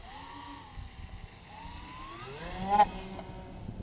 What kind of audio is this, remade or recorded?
recorded